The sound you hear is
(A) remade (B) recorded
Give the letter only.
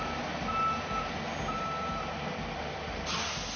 B